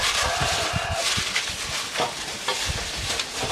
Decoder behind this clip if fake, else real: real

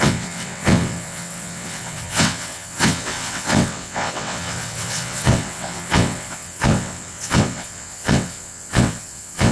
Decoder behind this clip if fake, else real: fake, vocoder, WaveNeXt